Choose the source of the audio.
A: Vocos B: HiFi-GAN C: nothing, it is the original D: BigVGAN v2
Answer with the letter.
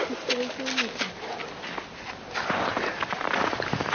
C